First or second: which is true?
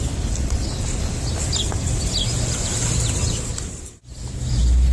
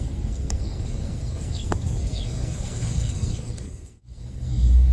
first